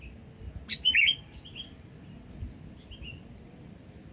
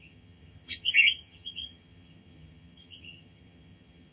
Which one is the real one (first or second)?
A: first